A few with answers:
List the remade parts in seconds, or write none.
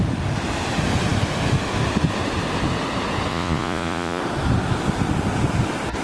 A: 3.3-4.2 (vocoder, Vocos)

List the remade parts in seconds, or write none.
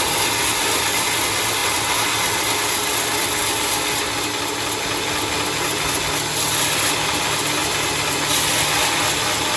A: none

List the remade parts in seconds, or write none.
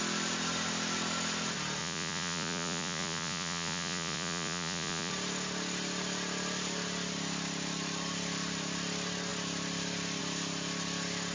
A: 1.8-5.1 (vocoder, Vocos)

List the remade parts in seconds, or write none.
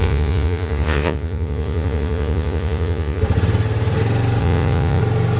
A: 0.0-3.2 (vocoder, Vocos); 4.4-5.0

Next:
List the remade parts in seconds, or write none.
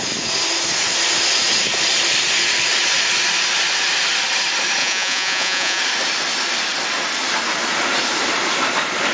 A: 4.8-5.8 (vocoder, Vocos)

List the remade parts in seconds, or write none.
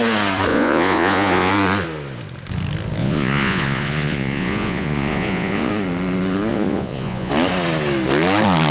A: 0.5-1.5 (vocoder, Vocos); 3.0-5.7; 6.5-7.3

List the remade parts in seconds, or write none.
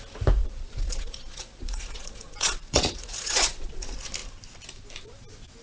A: 0.4-3.8 (vocoder, Vocos)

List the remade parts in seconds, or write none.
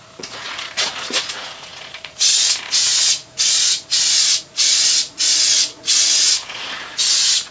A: 0.0-7.5 (vocoder, Vocos)